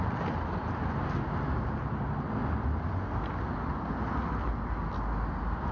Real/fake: real